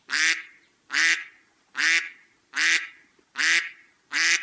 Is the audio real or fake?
real